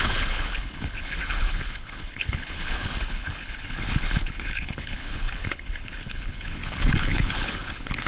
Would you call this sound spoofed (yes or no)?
yes